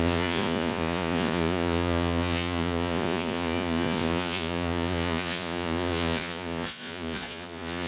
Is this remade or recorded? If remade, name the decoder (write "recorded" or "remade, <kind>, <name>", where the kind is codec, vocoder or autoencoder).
remade, vocoder, Vocos